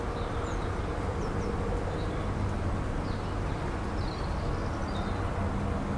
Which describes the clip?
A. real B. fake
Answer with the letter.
A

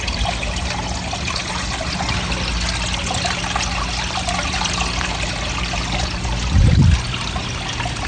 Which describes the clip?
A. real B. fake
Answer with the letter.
A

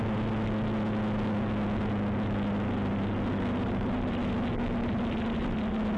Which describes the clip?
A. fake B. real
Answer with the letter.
B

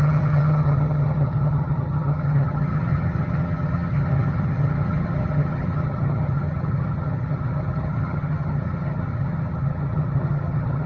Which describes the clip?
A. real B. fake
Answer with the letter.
B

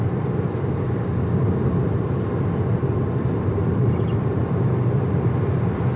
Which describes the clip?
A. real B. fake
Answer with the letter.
A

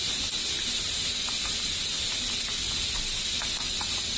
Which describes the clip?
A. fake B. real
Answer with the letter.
B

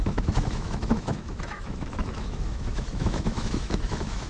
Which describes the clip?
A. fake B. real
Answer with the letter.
A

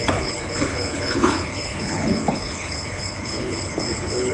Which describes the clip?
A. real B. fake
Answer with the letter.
B